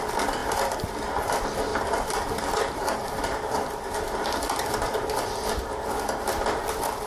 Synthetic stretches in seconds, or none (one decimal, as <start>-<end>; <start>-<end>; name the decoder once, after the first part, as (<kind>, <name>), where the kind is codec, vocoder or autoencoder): 0.4-1.2 (vocoder, BigVGAN v2); 1.7-5.0